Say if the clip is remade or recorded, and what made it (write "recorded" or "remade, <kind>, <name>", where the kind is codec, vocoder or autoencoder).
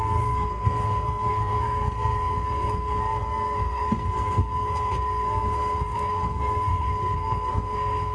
remade, codec, SNAC